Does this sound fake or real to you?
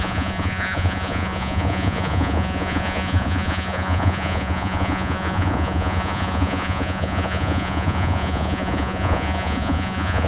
fake